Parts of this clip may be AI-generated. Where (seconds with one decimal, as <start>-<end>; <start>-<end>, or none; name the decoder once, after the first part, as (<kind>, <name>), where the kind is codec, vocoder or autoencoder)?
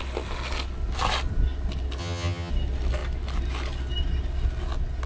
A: 2.0-2.5 (vocoder, HiFi-GAN)